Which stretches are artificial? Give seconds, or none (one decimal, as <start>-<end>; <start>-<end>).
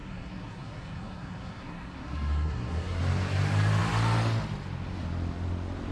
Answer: 0.0-3.0